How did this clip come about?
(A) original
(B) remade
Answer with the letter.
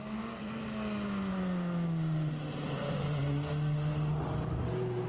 A